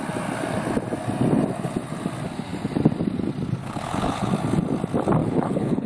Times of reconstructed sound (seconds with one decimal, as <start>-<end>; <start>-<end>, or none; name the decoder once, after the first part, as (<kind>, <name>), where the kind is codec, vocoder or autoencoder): 3.6-4.3 (codec, HILCodec); 5.2-5.9